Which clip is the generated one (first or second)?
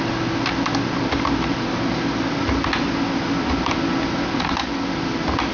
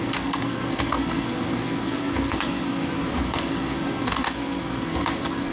second